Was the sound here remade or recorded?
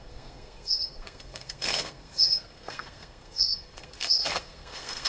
remade